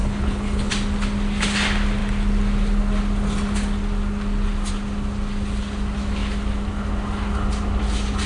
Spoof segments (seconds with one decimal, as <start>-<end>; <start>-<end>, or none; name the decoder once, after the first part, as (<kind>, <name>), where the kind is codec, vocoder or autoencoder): 0.0-0.7 (codec, HILCodec)